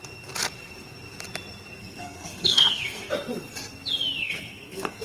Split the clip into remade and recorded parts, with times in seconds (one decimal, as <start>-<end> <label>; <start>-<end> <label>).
0.0-1.8 recorded; 1.8-3.1 remade; 3.1-4.2 recorded; 4.2-5.0 remade